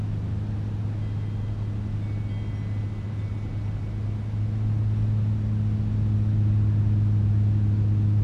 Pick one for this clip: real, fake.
real